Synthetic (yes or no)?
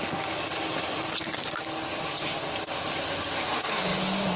no